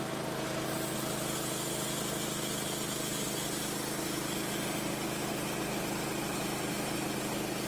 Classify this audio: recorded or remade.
recorded